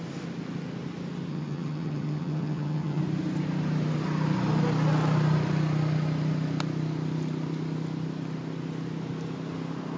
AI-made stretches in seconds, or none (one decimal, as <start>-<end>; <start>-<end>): 1.3-3.0